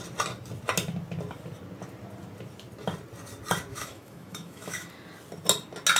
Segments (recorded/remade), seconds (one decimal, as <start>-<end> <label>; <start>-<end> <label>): 0.0-3.7 recorded; 3.7-4.9 remade; 4.9-6.0 recorded